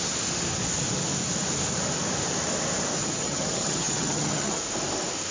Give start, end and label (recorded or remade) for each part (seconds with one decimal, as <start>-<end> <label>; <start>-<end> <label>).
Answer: 0.0-3.0 recorded; 3.0-4.6 remade; 4.6-5.3 recorded